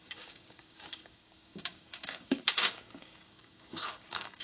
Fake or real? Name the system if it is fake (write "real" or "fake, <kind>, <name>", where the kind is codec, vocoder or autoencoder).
fake, codec, DAC